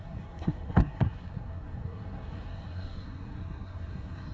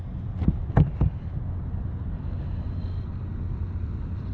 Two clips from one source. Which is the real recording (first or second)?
second